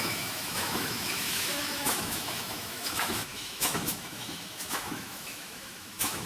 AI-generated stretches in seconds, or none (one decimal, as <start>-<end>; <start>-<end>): 0.0-6.3